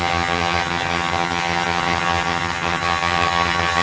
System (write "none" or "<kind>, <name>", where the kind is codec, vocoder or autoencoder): vocoder, HiFi-GAN